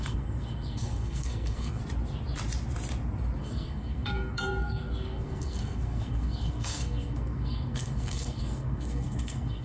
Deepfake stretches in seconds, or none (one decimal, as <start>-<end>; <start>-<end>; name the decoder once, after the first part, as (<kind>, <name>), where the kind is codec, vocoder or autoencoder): 0.0-1.8 (codec, SNAC); 3.4-9.6